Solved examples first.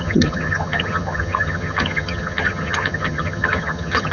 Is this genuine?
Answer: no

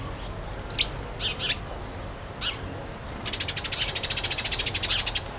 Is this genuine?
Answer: yes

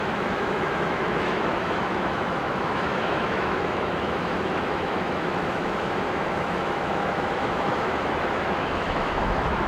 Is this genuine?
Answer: no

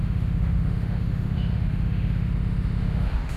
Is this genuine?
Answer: no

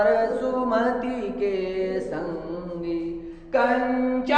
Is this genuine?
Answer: yes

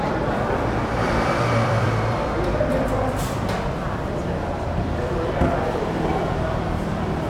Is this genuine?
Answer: no